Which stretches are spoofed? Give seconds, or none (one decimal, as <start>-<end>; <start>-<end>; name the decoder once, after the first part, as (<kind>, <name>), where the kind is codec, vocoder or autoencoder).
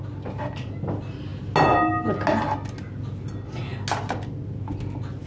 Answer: none